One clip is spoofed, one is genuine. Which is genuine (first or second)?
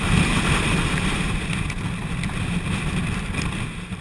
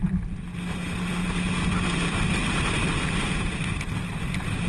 second